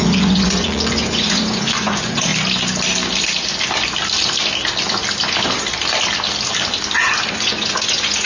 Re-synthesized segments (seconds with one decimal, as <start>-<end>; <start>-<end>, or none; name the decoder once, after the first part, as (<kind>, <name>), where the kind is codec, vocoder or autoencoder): 0.0-2.3 (vocoder, Vocos); 7.3-8.3